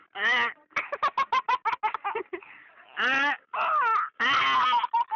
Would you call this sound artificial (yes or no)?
no